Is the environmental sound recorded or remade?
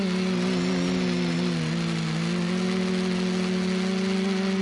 recorded